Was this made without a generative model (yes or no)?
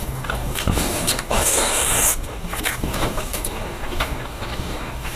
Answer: no